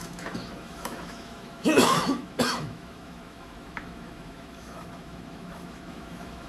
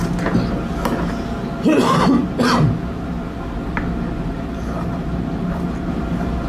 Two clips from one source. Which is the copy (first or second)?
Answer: first